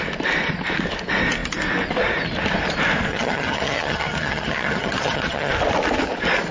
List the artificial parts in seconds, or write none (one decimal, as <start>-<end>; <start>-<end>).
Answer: 3.1-5.5